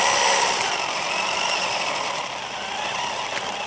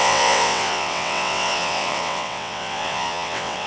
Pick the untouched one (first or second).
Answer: first